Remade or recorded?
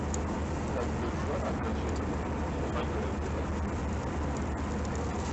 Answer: recorded